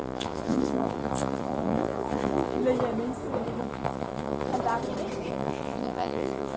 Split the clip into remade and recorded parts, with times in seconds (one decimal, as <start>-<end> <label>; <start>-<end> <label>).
0.0-2.6 remade; 2.6-3.6 recorded; 3.6-4.5 remade; 4.5-5.3 recorded; 5.3-6.6 remade